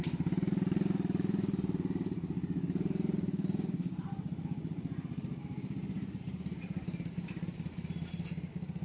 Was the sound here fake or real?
fake